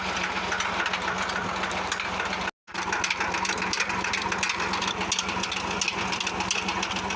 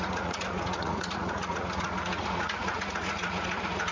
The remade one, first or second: second